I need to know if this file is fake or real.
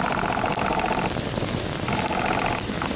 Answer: real